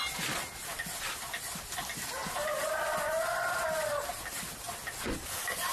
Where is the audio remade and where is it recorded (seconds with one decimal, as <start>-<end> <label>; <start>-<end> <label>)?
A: 0.0-5.7 recorded